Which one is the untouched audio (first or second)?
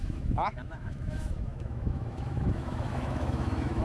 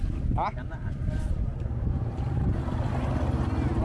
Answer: second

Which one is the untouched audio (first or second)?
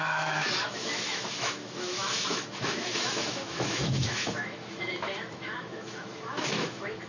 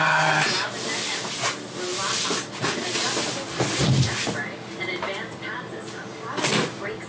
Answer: second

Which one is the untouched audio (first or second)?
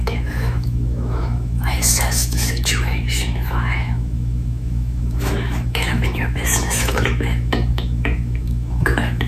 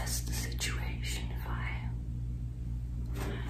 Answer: second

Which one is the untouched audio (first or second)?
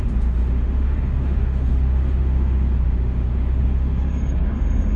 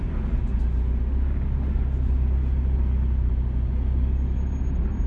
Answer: second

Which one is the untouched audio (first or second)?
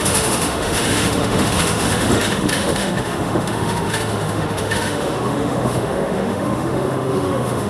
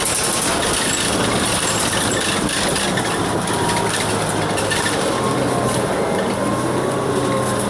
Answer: second